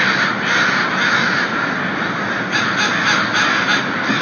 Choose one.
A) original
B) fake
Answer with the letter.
A